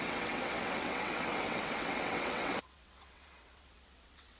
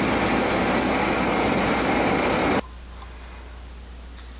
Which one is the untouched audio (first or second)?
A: second